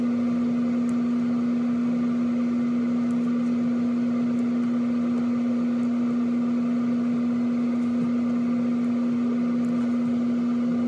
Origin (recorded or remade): recorded